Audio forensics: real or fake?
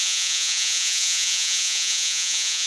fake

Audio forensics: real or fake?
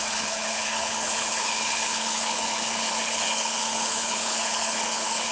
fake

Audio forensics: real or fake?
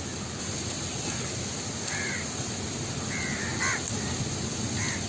real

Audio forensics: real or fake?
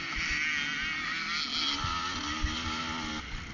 real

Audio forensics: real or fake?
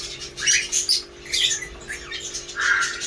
real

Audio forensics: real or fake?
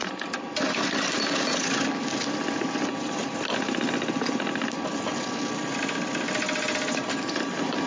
real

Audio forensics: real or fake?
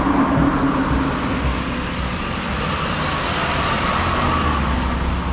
real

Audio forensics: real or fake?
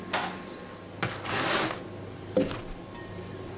real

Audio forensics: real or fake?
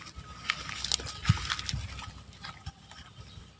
real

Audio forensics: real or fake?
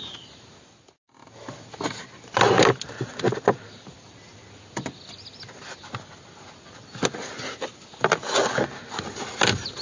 real